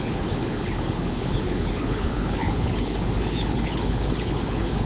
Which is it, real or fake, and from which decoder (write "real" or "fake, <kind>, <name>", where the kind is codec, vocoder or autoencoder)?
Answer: fake, codec, HILCodec